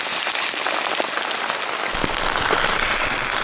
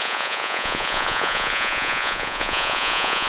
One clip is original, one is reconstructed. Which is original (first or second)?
first